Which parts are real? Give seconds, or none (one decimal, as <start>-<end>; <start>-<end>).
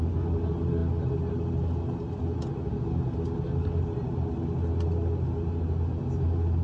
0.0-6.6